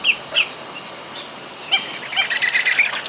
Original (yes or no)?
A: yes